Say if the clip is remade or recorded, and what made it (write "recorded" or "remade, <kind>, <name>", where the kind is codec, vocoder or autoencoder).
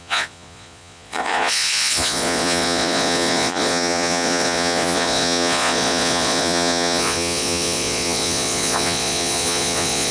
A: remade, vocoder, Vocos